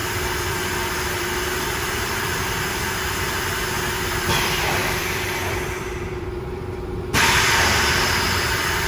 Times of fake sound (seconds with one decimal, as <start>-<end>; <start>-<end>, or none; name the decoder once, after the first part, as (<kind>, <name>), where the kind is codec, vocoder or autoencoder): 0.0-8.9 (vocoder, BigVGAN v2)